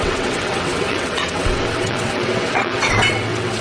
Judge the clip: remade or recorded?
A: remade